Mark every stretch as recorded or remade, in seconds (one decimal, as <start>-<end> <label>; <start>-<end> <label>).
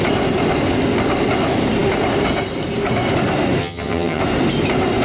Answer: 0.0-3.6 recorded; 3.6-4.2 remade; 4.2-5.0 recorded